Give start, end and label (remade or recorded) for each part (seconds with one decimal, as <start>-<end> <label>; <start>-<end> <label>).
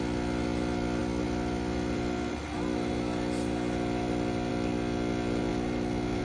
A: 0.0-6.2 recorded